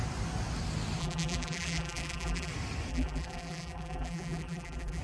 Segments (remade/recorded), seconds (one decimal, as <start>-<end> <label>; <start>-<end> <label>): 0.0-1.0 recorded; 1.0-2.5 remade; 2.5-2.9 recorded; 2.9-5.0 remade